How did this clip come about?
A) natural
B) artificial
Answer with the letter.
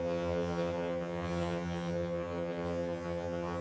B